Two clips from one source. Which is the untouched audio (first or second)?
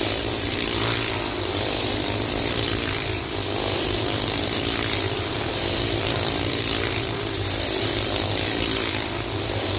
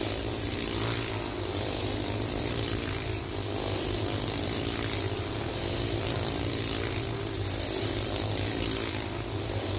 second